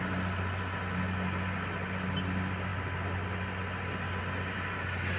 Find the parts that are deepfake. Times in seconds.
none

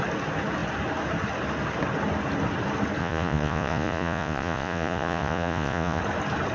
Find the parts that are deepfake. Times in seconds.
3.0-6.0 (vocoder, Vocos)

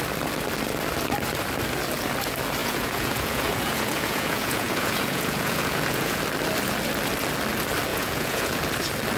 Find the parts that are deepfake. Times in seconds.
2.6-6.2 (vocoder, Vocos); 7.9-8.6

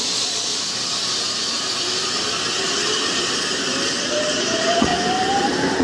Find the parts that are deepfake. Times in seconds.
0.0-0.5 (vocoder, Vocos); 4.0-4.9

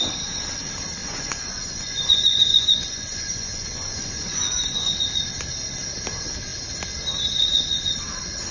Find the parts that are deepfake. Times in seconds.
1.0-4.9 (vocoder, Vocos)

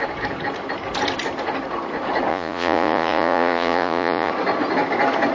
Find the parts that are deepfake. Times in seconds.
2.3-4.3 (vocoder, Vocos)

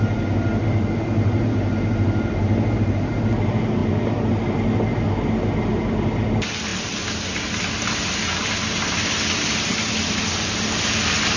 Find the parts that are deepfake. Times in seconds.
none